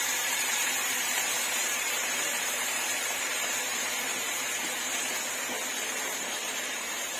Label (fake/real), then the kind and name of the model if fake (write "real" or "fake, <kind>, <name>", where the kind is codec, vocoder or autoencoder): fake, vocoder, BigVGAN v2